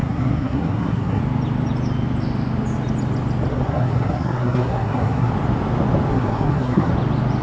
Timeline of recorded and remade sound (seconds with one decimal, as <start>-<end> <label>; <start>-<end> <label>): 0.0-1.2 remade; 1.2-3.5 recorded; 3.5-5.3 remade; 5.3-6.1 recorded; 6.1-6.9 remade; 6.9-7.4 recorded